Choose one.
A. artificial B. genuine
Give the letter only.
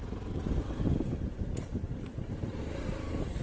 B